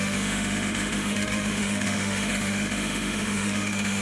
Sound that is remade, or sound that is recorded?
remade